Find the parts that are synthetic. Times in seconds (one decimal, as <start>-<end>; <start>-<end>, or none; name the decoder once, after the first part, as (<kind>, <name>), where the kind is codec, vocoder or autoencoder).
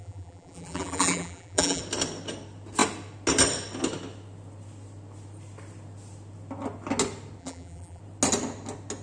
0.0-1.8 (vocoder, BigVGAN v2); 7.4-8.0